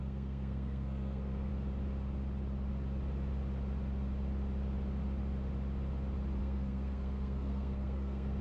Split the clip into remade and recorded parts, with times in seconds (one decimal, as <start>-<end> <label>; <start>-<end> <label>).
0.0-1.5 remade; 1.5-6.4 recorded; 6.4-8.4 remade